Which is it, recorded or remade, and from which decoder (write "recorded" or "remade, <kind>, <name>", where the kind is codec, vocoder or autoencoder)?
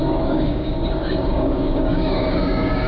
remade, codec, DAC